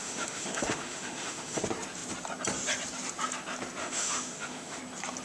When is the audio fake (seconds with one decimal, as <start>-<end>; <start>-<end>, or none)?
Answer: 0.0-1.6; 3.8-4.8